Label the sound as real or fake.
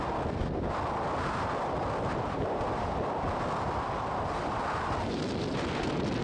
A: real